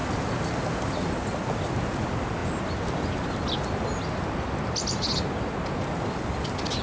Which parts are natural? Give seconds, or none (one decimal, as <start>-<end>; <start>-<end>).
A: 0.0-6.8